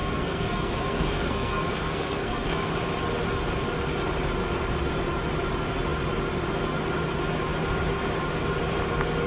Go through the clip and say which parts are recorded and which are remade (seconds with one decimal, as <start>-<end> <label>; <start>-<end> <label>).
0.0-2.7 remade; 2.7-9.3 recorded